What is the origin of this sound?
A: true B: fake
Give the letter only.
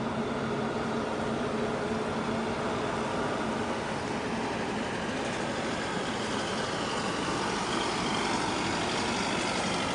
A